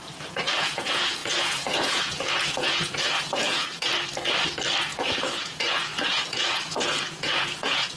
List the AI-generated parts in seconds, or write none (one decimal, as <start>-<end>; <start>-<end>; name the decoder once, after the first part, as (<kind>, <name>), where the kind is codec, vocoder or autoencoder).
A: 0.0-3.9 (vocoder, Vocos); 4.8-8.0